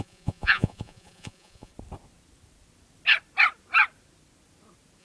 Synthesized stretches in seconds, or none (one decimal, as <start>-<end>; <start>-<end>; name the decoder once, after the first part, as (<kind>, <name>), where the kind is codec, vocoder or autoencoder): 0.0-1.7 (vocoder, Vocos)